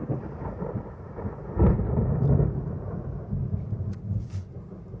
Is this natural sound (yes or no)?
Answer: yes